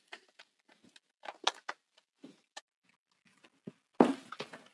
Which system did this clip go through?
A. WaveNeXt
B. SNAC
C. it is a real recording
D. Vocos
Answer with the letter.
C